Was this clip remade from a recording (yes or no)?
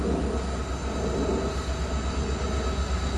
no